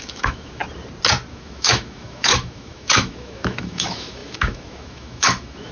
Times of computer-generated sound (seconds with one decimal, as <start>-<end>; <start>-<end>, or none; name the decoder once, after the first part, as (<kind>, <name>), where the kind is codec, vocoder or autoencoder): 0.0-0.6 (autoencoder, DAC-VAE); 1.3-5.7